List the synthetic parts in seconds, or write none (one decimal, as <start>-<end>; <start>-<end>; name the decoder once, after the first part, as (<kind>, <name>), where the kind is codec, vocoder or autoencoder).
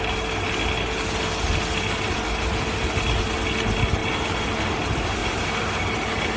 5.2-6.0 (vocoder, BigVGAN v2)